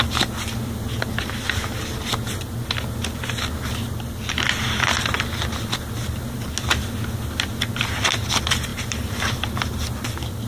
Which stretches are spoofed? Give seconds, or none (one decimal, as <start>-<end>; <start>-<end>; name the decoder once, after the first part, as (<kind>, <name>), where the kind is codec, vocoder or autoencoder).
8.7-9.2 (vocoder, BigVGAN v2)